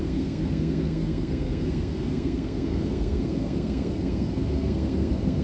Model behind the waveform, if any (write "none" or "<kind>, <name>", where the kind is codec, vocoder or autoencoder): codec, SNAC